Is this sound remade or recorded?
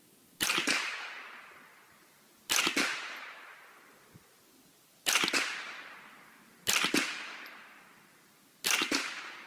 recorded